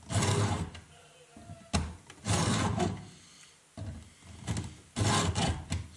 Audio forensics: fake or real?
real